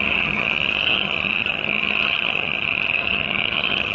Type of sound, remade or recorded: remade